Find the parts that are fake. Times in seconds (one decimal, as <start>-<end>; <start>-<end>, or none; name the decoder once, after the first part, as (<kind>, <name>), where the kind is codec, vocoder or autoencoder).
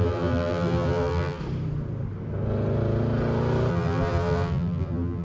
0.0-1.4 (vocoder, BigVGAN v2); 3.7-5.2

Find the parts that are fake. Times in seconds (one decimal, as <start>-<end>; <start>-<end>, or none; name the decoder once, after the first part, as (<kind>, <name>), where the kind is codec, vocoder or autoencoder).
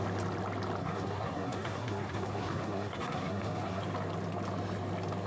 0.8-3.8 (codec, SNAC)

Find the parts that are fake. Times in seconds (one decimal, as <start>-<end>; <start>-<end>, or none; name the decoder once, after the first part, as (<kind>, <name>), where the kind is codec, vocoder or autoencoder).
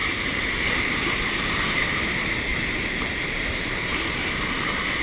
0.0-1.0 (vocoder, BigVGAN v2); 2.5-3.6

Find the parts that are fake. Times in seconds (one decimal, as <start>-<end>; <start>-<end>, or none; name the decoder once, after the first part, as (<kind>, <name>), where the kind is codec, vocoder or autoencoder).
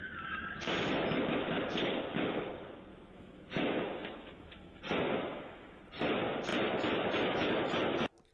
2.9-4.8 (autoencoder, DAC-VAE); 5.3-5.8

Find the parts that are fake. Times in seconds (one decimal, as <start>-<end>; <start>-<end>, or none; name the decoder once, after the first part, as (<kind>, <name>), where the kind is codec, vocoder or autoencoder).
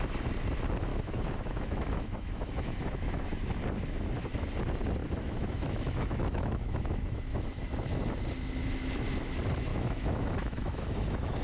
0.9-3.4 (autoencoder, DAC-VAE); 5.0-8.0; 9.7-11.4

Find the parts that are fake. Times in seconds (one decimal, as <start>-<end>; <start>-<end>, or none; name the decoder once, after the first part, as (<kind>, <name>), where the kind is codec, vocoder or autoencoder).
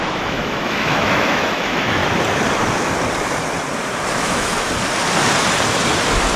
0.0-2.0 (autoencoder, DAC-VAE); 4.1-4.5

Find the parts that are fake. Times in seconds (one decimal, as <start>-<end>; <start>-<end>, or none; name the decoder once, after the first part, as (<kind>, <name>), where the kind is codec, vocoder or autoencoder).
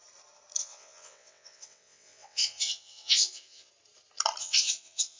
0.6-3.7 (vocoder, WaveNeXt); 4.4-5.2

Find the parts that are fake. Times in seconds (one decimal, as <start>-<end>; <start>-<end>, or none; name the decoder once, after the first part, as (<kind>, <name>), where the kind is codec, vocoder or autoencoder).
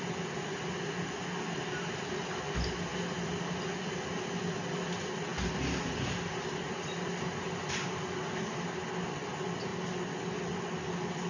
none